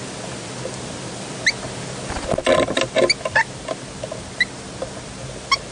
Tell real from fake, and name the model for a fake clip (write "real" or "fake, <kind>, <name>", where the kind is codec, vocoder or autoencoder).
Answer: real